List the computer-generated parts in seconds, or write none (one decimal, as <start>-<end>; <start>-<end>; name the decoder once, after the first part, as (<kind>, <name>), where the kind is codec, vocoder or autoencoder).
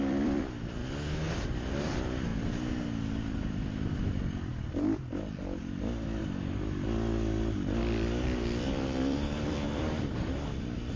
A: 0.0-0.8 (vocoder, BigVGAN v2); 1.3-2.3; 3.4-4.5; 5.2-6.2; 7.8-11.0